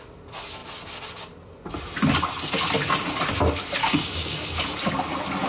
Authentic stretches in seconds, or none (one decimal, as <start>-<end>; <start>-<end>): 0.0-3.8; 4.6-5.5